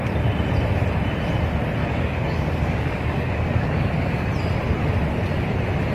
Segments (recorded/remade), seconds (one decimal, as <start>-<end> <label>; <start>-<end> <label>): 0.0-1.8 recorded; 1.8-4.3 remade; 4.3-5.9 recorded